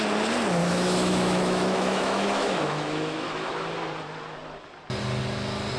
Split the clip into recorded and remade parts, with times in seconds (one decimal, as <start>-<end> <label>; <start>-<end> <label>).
0.0-0.6 recorded; 0.6-3.5 remade; 3.5-5.8 recorded

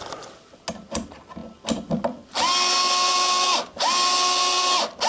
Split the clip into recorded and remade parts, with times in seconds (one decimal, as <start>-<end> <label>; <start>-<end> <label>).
0.0-5.1 recorded

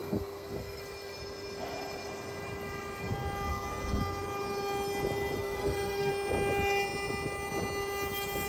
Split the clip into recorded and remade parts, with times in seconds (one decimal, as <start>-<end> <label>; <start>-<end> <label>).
0.0-0.8 remade; 0.8-3.5 recorded; 3.5-4.0 remade; 4.0-5.4 recorded; 5.4-6.1 remade; 6.1-8.5 recorded

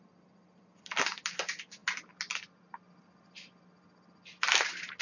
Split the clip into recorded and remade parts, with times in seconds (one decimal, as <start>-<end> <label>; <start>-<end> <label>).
0.0-5.0 recorded

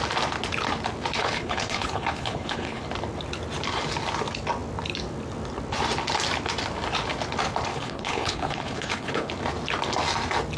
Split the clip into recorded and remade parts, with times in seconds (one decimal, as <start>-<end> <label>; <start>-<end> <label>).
0.0-1.2 recorded; 1.2-2.8 remade; 2.8-7.7 recorded; 7.7-9.3 remade; 9.3-10.6 recorded